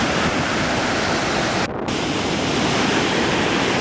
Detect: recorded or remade recorded